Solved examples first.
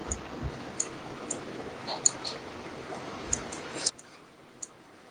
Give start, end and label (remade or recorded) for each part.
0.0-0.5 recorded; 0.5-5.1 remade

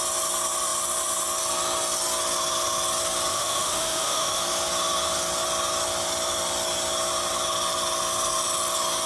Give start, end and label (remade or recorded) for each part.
0.0-3.3 recorded; 3.3-4.4 remade; 4.4-9.1 recorded

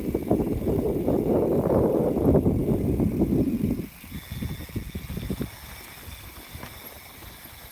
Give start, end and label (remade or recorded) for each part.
0.0-7.7 recorded

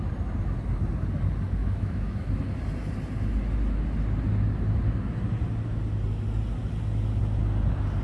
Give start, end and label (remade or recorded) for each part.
0.0-1.6 recorded; 1.6-2.3 remade; 2.3-8.0 recorded

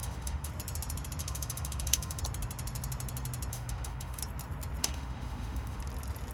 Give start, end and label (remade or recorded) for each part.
0.0-0.5 remade; 0.5-1.2 recorded; 1.2-2.2 remade; 2.2-3.5 recorded; 3.5-4.2 remade; 4.2-4.8 recorded; 4.8-5.8 remade; 5.8-6.3 recorded

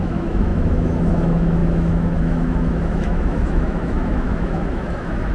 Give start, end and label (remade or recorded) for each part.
0.0-5.3 remade